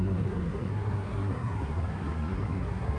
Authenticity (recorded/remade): remade